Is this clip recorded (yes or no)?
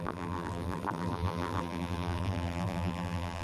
no